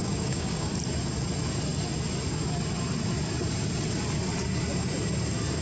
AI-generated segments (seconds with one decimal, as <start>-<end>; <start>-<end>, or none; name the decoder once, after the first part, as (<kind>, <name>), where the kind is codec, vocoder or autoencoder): 0.0-0.7 (codec, DAC)